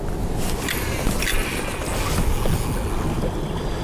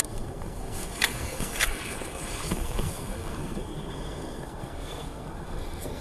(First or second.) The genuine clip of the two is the first